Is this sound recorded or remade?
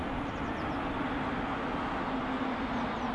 recorded